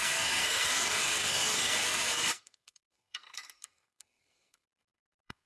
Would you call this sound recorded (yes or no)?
no